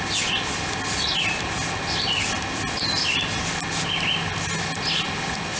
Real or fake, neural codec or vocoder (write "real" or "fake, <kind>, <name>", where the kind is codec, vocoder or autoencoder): real